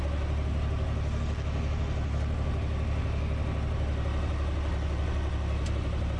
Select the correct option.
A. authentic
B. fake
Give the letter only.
A